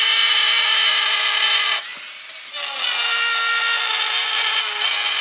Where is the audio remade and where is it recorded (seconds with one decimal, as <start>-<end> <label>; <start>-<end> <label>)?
0.0-5.2 recorded